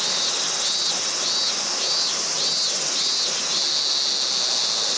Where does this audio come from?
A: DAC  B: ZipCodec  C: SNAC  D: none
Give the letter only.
D